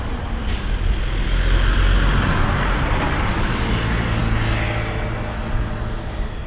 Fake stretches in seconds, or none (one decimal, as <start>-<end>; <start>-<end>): none